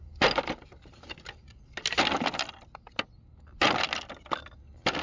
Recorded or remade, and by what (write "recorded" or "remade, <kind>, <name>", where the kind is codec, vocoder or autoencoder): recorded